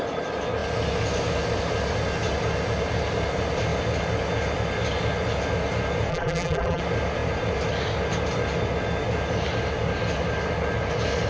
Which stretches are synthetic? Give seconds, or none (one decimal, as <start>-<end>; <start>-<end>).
6.1-6.8